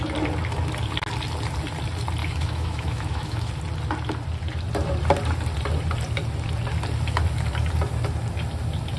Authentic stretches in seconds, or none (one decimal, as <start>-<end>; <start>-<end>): 0.0-2.2; 3.5-9.0